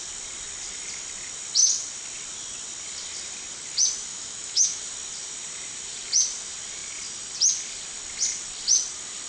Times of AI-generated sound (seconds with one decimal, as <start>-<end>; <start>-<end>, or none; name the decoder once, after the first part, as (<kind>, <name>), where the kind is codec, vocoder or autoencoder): 4.1-4.8 (autoencoder, DAC-VAE)